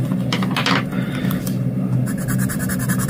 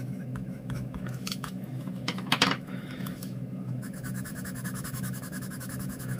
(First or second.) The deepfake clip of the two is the second